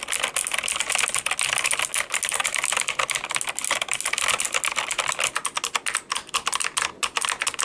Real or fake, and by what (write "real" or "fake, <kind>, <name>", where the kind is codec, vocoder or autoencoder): real